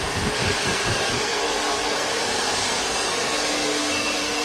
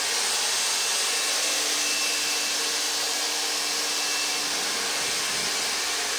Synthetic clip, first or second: first